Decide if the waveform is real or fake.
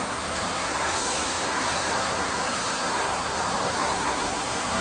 fake